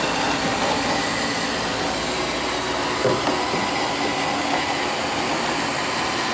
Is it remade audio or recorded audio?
recorded